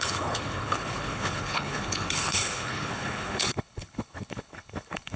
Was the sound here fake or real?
fake